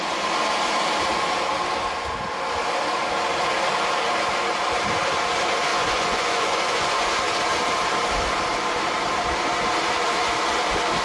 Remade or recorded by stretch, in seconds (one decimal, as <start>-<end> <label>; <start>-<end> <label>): 0.0-5.7 recorded; 5.7-7.1 remade; 7.1-11.0 recorded